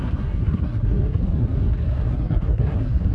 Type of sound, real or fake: fake